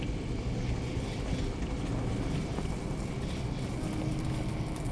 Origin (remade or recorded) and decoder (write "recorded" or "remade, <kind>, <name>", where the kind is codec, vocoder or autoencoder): recorded